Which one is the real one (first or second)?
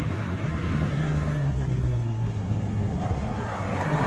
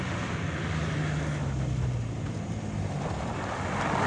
second